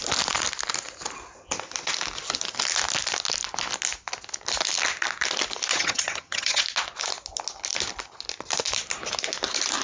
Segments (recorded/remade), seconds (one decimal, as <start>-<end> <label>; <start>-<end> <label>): 0.0-5.7 recorded; 5.7-6.6 remade; 6.6-9.8 recorded